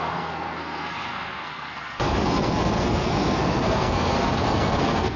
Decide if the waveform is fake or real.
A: fake